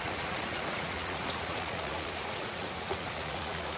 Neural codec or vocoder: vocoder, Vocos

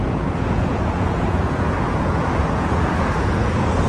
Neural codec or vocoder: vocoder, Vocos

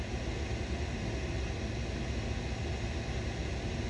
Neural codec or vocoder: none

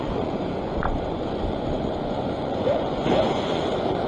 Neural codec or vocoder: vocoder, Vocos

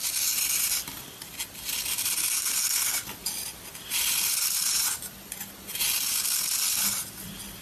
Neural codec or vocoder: none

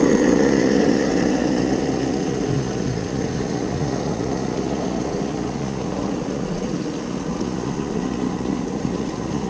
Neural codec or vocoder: vocoder, Vocos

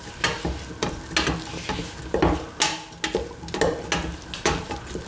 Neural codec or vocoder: none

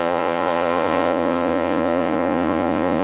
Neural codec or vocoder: vocoder, Vocos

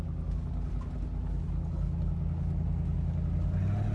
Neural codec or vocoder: none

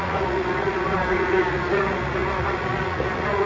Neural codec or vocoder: vocoder, Vocos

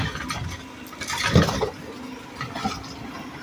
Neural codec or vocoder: none